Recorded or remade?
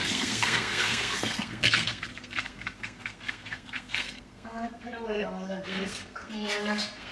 remade